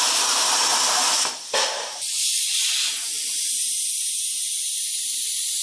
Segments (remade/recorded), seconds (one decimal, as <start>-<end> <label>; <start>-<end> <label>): 0.0-5.6 recorded